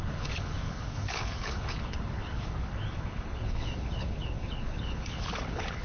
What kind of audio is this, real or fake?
fake